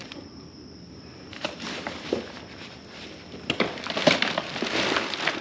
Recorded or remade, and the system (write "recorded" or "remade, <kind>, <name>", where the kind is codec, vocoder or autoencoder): remade, vocoder, BigVGAN v2